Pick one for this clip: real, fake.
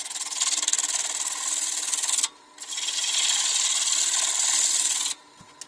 real